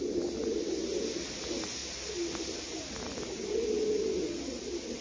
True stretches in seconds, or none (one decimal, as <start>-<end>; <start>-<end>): 0.0-5.0